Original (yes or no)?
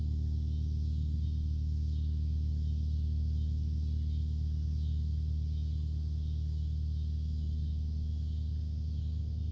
yes